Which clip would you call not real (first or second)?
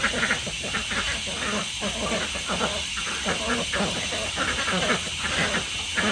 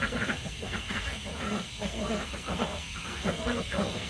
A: second